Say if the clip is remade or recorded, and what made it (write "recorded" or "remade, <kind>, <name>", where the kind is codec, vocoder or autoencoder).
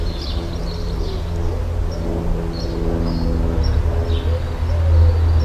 recorded